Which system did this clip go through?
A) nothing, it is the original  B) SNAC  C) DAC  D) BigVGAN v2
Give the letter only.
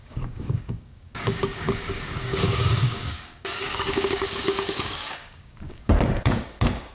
C